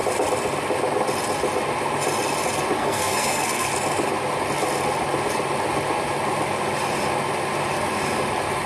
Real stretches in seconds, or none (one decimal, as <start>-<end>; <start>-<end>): 0.0-2.8; 3.7-8.7